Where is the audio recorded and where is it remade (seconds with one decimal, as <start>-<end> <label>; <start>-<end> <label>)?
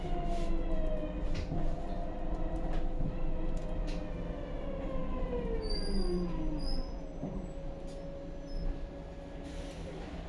0.0-10.3 recorded